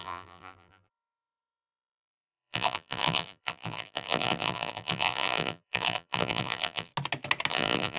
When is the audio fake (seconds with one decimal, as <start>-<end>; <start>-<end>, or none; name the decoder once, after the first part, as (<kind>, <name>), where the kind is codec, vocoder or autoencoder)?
0.0-6.9 (vocoder, BigVGAN v2); 7.5-8.0